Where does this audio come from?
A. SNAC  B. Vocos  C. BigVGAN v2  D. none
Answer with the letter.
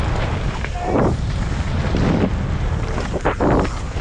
C